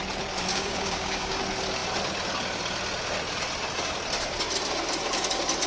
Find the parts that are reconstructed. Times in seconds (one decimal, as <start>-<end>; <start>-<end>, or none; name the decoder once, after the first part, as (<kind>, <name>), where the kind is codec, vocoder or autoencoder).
0.5-1.4 (codec, DAC)